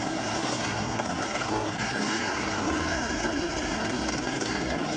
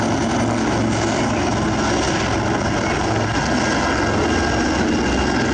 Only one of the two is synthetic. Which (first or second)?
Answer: first